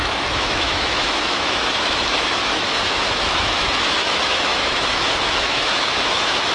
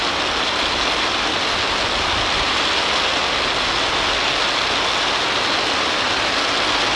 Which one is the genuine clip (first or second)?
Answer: second